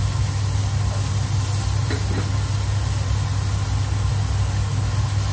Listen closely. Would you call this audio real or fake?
real